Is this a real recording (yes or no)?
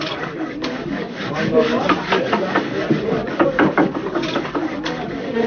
no